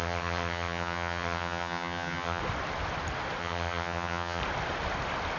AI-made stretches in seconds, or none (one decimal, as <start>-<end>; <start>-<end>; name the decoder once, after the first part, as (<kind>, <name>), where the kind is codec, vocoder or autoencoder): 0.0-2.4 (vocoder, HiFi-GAN); 3.4-4.4